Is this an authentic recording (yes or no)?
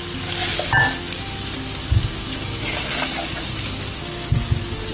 yes